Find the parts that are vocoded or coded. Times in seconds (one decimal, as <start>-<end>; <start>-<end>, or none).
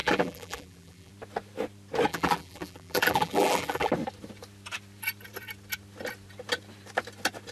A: 0.0-1.1; 2.1-3.9